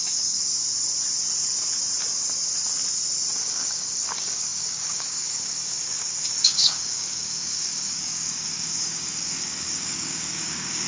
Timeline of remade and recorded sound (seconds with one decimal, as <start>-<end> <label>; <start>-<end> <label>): 0.0-0.5 remade; 0.5-3.4 recorded; 3.4-10.9 remade